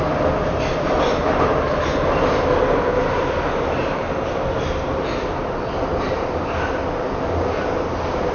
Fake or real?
real